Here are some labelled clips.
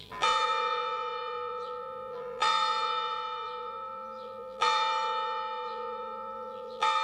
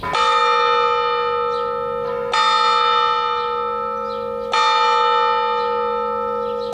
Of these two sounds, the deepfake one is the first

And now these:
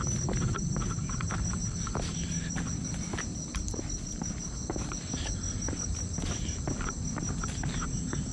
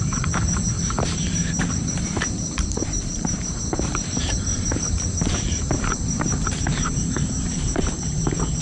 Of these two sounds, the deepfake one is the second